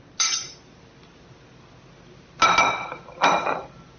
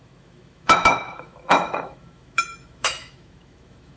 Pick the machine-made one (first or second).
second